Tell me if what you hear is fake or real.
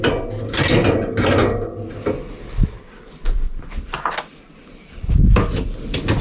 real